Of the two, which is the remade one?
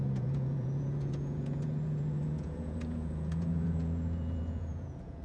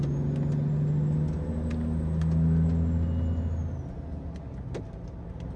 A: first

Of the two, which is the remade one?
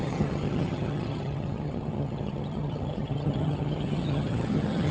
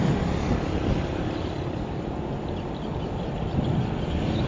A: first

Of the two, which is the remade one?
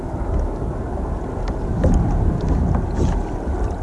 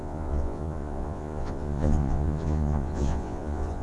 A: second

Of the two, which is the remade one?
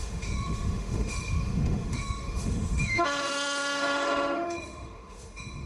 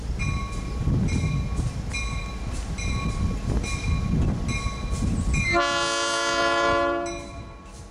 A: first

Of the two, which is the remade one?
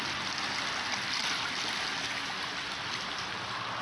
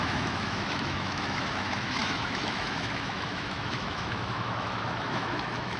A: second